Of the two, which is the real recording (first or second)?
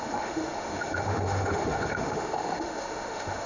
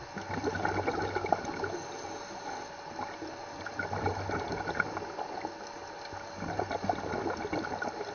second